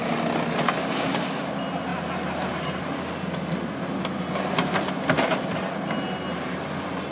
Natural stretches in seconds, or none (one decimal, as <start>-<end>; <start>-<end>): 0.0-7.1